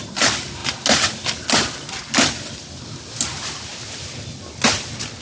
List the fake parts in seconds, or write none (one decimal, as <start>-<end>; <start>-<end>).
none